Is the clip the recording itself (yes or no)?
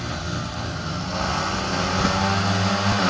yes